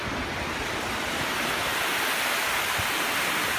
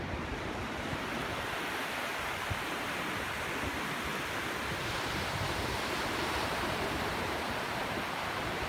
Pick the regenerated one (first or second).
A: second